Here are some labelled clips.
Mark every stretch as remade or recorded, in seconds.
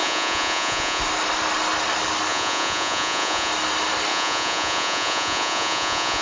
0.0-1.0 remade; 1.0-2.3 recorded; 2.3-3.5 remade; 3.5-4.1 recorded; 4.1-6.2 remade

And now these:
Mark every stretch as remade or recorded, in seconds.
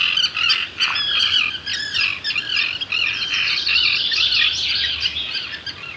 0.0-6.0 recorded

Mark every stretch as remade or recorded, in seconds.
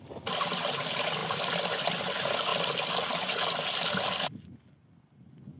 0.0-5.6 recorded